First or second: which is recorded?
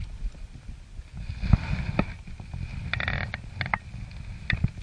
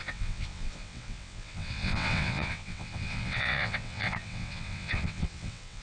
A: first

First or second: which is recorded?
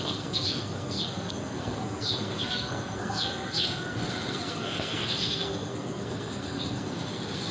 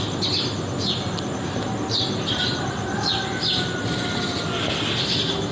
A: second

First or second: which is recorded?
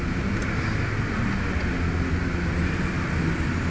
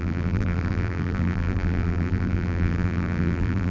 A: first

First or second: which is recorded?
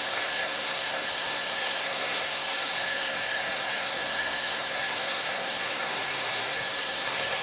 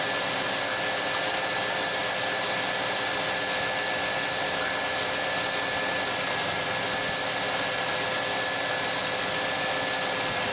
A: second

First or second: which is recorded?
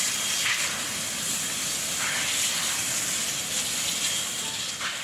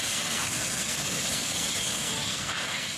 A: first